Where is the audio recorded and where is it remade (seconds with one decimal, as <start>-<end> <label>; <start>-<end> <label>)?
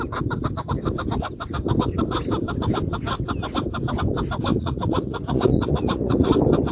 0.0-4.5 recorded; 4.5-6.3 remade; 6.3-6.7 recorded